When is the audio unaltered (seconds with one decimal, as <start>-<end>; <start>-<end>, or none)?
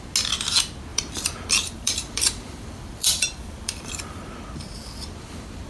0.0-0.9; 4.3-5.7